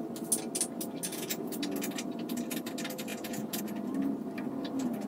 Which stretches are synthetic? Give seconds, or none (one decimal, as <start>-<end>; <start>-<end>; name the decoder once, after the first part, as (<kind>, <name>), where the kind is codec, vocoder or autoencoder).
1.1-1.6 (vocoder, Vocos); 3.1-3.6